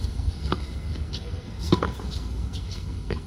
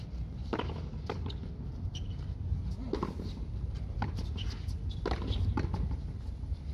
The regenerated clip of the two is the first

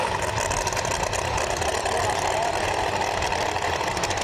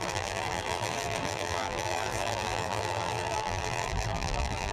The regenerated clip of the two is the second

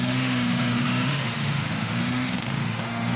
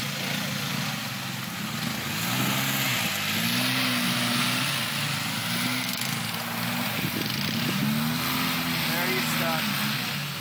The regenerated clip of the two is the first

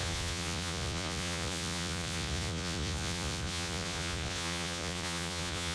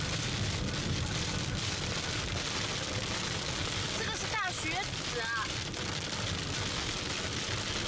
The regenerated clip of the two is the first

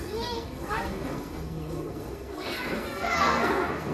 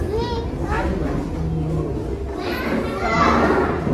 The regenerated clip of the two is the first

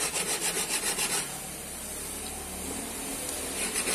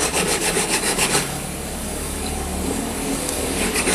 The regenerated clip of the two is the second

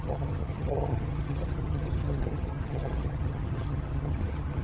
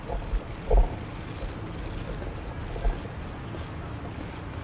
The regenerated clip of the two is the first